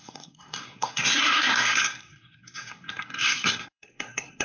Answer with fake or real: fake